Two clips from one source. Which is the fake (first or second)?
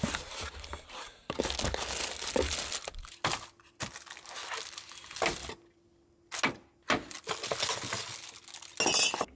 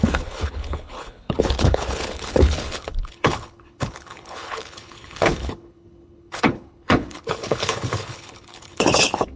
second